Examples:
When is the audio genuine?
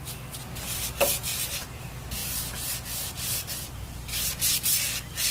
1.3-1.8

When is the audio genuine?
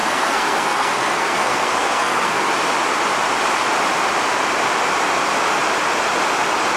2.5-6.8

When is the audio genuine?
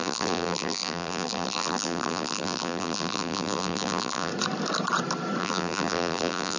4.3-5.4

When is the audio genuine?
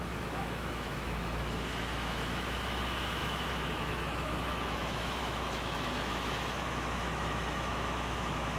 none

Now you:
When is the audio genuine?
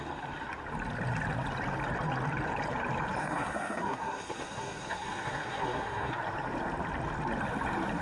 0.0-3.2; 6.1-8.0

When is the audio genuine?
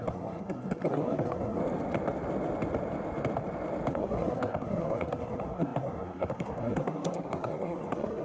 1.6-3.9